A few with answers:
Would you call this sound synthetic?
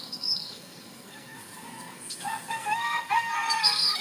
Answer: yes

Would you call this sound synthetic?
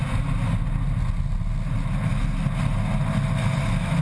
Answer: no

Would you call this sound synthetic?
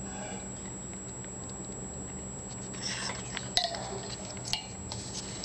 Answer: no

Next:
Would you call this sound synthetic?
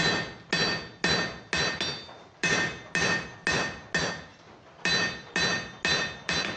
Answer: no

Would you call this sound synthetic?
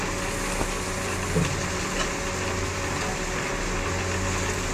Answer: no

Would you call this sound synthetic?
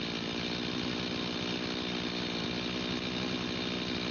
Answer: no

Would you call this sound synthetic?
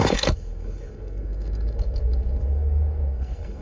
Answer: yes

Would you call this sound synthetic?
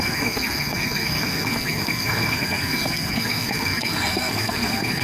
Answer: yes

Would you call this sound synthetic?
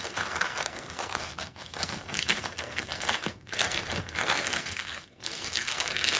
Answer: yes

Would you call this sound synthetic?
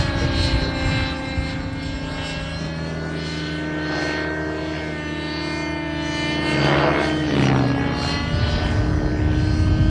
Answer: no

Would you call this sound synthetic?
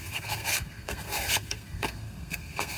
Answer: yes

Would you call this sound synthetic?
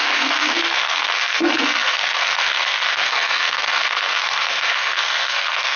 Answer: yes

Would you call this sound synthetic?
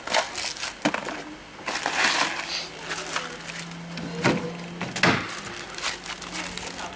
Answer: no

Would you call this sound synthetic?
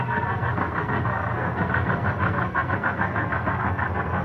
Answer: yes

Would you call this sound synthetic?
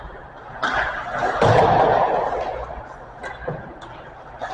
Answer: no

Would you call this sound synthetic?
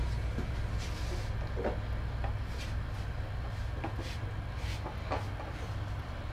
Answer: no